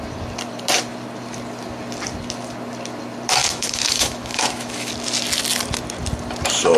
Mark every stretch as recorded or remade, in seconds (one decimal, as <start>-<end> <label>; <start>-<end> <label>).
0.0-3.4 recorded; 3.4-4.9 remade; 4.9-6.8 recorded